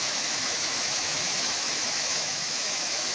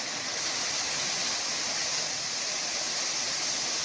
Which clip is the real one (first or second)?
second